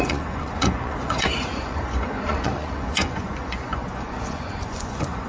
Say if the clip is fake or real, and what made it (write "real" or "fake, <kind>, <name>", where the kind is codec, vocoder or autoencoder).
fake, vocoder, Vocos